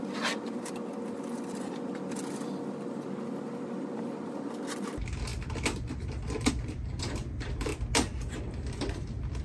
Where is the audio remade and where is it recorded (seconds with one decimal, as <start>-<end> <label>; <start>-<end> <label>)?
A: 0.0-7.7 remade; 7.7-8.4 recorded; 8.4-9.4 remade